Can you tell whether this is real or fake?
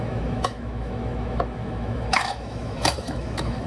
fake